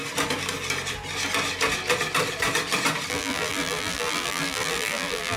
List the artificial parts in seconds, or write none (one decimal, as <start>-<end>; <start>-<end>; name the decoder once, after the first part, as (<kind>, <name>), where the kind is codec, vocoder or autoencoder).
3.1-5.4 (vocoder, BigVGAN v2)